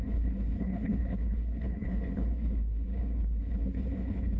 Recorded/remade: remade